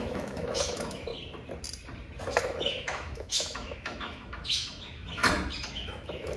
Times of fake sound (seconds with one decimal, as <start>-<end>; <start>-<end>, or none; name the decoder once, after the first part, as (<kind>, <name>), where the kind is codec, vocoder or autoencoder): 0.0-1.1 (autoencoder, DAC-VAE); 2.3-5.2; 5.7-6.4